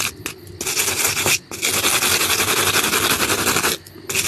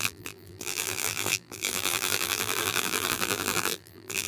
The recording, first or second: first